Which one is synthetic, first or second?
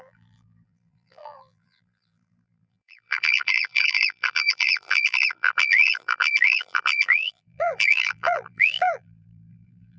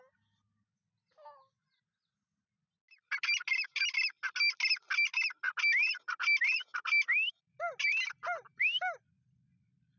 first